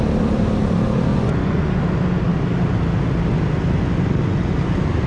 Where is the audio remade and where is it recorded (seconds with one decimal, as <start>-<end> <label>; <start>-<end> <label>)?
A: 0.0-1.1 recorded; 1.1-1.8 remade; 1.8-5.1 recorded